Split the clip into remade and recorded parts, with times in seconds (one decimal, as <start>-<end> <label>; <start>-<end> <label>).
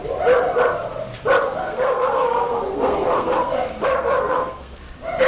0.0-1.6 recorded; 1.6-4.8 remade; 4.8-5.3 recorded